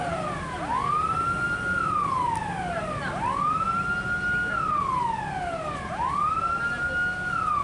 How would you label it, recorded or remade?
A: recorded